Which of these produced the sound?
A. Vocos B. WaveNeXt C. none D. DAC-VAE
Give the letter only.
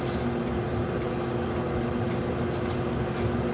C